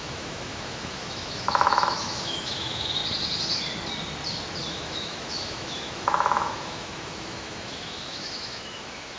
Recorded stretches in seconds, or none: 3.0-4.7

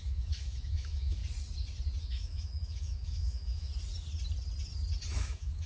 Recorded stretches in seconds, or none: 1.2-2.0; 3.7-5.1

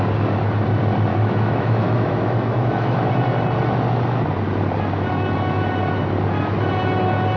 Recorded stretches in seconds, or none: 0.0-1.1; 3.1-7.4

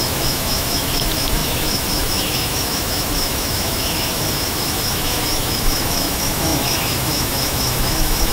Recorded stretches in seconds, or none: none

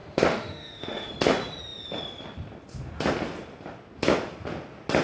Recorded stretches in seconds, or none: 1.1-5.0

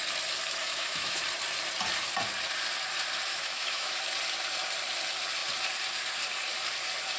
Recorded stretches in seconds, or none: 0.0-0.6; 1.2-3.3; 4.0-7.2